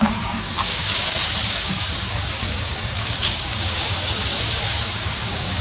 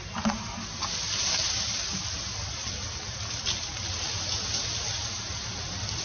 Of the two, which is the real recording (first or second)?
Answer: second